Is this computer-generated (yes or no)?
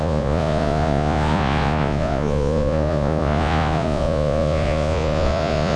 yes